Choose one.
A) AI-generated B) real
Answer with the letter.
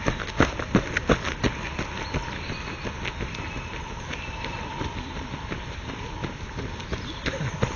B